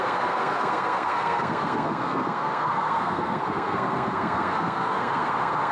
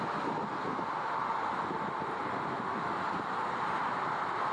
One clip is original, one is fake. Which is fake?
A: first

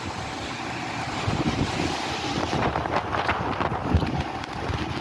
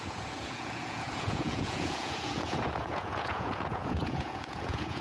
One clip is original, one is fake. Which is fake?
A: second